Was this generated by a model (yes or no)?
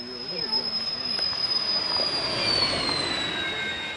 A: no